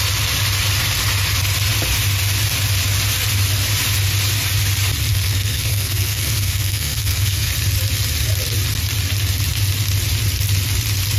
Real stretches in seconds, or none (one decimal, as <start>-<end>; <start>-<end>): 0.0-5.1; 7.5-11.2